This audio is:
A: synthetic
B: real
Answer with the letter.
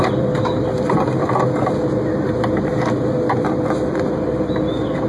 B